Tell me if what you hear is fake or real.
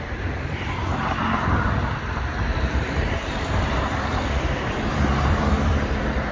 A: fake